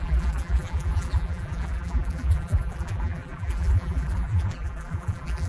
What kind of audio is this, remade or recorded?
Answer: remade